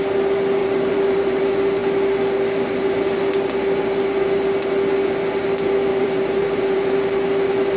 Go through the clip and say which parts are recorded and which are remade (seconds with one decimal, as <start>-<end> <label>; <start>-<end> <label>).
0.0-0.6 recorded; 0.6-1.4 remade; 1.4-5.9 recorded; 5.9-6.9 remade; 6.9-7.8 recorded